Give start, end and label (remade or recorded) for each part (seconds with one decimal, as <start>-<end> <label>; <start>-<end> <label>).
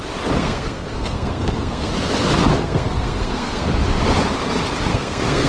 0.0-0.4 recorded; 0.4-1.9 remade; 1.9-2.4 recorded; 2.4-3.7 remade; 3.7-4.9 recorded; 4.9-5.5 remade